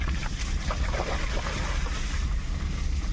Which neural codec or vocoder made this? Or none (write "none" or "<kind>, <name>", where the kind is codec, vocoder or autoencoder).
none